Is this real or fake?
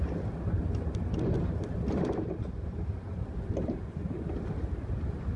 real